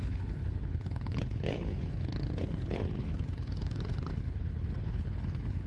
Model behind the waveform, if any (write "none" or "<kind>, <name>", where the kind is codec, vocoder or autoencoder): codec, HILCodec